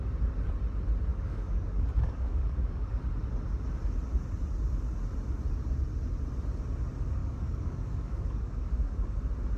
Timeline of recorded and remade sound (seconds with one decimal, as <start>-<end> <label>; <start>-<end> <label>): 0.0-1.1 recorded; 1.1-3.0 remade; 3.0-7.2 recorded; 7.2-9.2 remade; 9.2-9.6 recorded

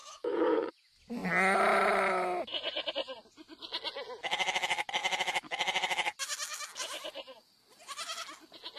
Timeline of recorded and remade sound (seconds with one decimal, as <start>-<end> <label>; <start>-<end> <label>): 0.0-0.7 remade; 0.7-8.8 recorded

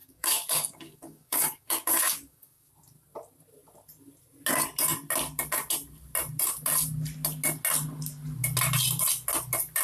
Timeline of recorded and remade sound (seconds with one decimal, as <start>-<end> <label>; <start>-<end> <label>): 0.0-2.7 remade; 2.7-9.8 recorded

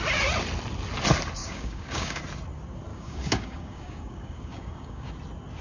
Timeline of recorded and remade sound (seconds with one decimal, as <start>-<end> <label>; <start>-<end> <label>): 0.0-1.4 recorded; 1.4-2.2 remade; 2.2-2.9 recorded; 2.9-5.1 remade; 5.1-5.6 recorded

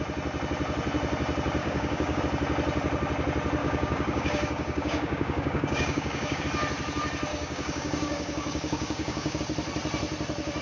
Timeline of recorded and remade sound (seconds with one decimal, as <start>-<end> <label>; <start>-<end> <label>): 0.0-1.6 recorded; 1.6-2.2 remade; 2.2-3.6 recorded; 3.6-6.4 remade; 6.4-7.3 recorded; 7.3-9.4 remade; 9.4-10.6 recorded

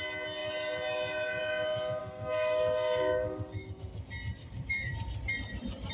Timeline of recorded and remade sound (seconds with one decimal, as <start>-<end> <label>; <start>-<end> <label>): 0.0-2.0 recorded; 2.0-3.8 remade; 3.8-4.4 recorded; 4.4-4.9 remade; 4.9-5.9 recorded

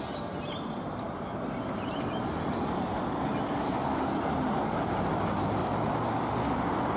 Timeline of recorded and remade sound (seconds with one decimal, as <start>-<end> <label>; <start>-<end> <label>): 0.0-7.0 recorded

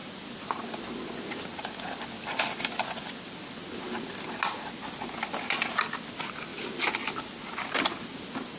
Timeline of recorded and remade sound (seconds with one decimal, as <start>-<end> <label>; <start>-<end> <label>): 0.0-8.6 recorded